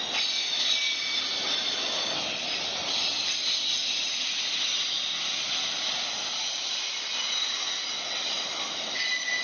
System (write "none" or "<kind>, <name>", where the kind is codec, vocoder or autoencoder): none